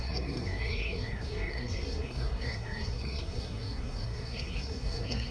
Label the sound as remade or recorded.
remade